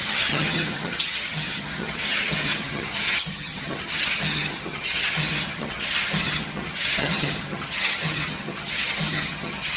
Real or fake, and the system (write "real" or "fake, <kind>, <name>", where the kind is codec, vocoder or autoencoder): fake, vocoder, HiFi-GAN